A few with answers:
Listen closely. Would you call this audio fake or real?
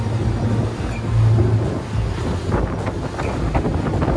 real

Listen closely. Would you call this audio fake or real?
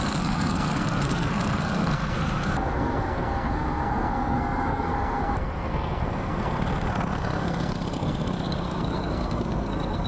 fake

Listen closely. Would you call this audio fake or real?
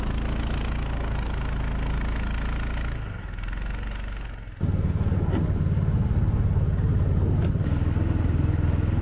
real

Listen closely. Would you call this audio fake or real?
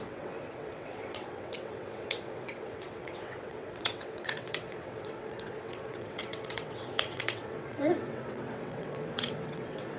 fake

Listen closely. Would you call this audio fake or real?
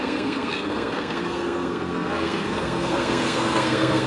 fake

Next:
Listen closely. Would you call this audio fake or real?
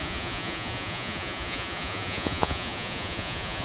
fake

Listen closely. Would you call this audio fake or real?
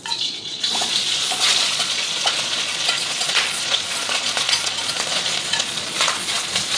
fake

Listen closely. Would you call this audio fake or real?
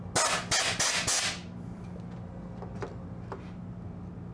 real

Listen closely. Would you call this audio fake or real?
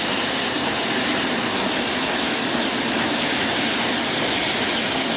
real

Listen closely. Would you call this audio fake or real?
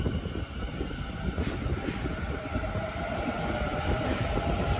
real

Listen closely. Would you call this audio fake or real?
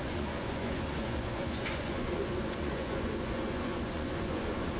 fake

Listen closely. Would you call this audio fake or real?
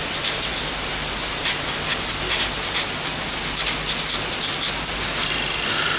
real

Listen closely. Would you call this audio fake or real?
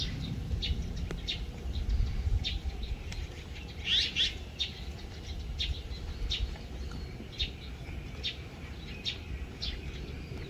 real